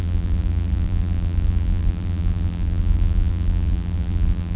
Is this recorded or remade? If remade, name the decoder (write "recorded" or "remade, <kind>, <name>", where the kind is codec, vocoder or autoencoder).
remade, vocoder, BigVGAN v2